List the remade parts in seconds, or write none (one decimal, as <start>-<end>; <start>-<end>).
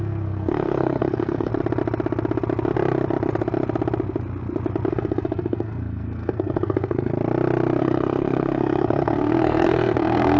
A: 0.0-1.5; 4.9-7.1; 7.8-10.4